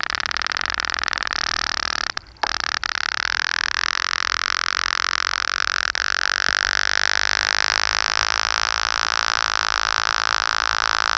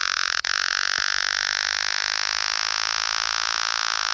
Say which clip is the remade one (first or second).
second